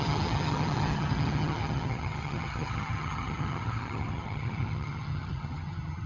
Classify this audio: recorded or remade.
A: remade